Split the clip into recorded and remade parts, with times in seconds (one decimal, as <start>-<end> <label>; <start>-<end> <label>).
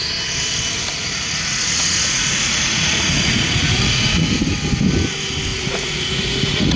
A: 0.0-1.0 recorded; 1.0-4.3 remade; 4.3-5.5 recorded; 5.5-6.8 remade